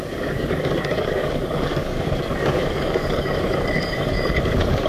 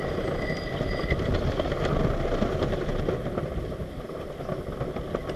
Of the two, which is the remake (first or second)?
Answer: first